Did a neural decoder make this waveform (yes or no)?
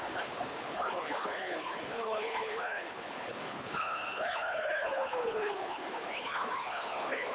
yes